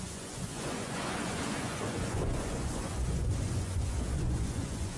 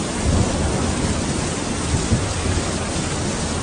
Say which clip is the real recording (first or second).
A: second